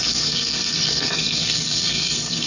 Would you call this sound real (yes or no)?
no